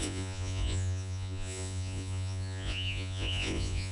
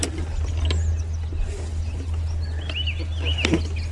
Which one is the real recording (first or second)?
second